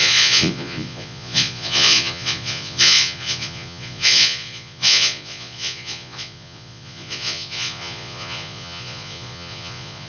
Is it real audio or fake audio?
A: fake